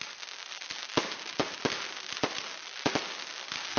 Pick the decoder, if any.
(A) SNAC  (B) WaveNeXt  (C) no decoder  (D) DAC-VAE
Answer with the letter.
C